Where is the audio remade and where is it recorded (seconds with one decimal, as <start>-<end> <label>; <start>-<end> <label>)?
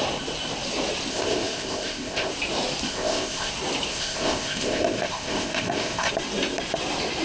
0.0-1.1 recorded; 1.1-2.3 remade; 2.3-2.9 recorded; 2.9-3.5 remade; 3.5-3.9 recorded; 3.9-6.1 remade; 6.1-7.2 recorded